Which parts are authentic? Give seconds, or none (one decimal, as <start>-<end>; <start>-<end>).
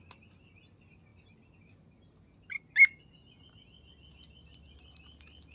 0.0-5.5